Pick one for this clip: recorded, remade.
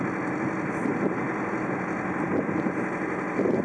recorded